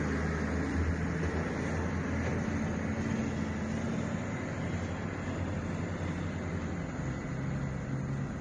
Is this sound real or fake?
real